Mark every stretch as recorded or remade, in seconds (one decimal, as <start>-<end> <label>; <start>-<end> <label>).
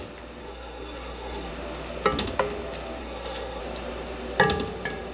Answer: 0.0-0.4 recorded; 0.4-1.5 remade; 1.5-3.0 recorded; 3.0-3.6 remade; 3.6-5.1 recorded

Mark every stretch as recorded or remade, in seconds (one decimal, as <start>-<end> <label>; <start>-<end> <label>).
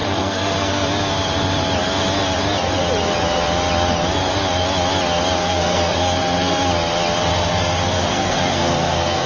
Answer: 0.0-0.9 remade; 0.9-5.4 recorded; 5.4-6.7 remade; 6.7-7.3 recorded; 7.3-9.3 remade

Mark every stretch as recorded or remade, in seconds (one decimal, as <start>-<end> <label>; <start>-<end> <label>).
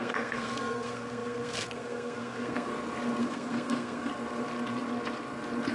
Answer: 0.0-2.7 remade; 2.7-3.2 recorded; 3.2-4.1 remade; 4.1-5.7 recorded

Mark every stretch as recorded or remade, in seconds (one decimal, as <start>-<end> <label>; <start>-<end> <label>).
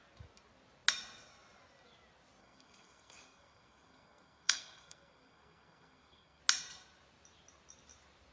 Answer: 0.0-2.4 recorded; 2.4-6.4 remade; 6.4-8.3 recorded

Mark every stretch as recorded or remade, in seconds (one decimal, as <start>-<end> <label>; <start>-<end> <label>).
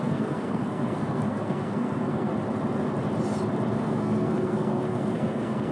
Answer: 0.0-2.3 remade; 2.3-3.7 recorded; 3.7-5.7 remade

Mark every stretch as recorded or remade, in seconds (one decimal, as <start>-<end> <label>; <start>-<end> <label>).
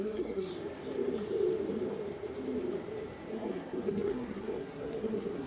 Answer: 0.0-0.5 remade; 0.5-3.3 recorded; 3.3-5.5 remade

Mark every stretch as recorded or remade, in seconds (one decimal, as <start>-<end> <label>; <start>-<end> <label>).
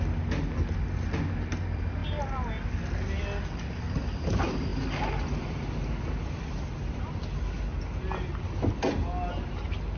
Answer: 0.0-10.0 recorded